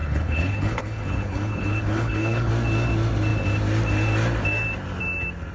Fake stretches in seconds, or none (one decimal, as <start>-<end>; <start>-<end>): 0.0-2.5